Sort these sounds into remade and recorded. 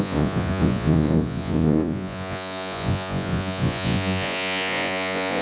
remade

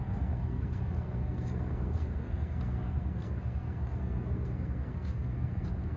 remade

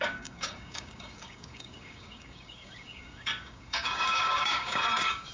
remade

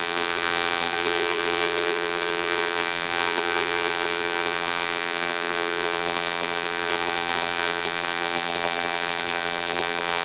remade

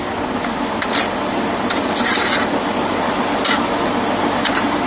recorded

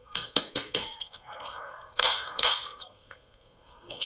remade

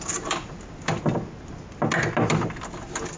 recorded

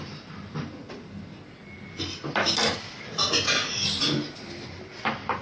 recorded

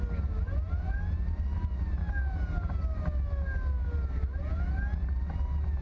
recorded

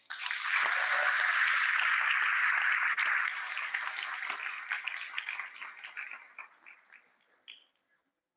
recorded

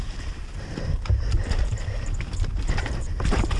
remade